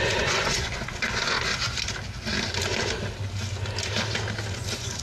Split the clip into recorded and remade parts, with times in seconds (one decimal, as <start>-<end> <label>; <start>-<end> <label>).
0.0-1.5 remade; 1.5-4.5 recorded; 4.5-5.0 remade